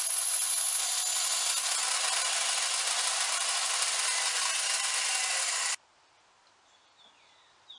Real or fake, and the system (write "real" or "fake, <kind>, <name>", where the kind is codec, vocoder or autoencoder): real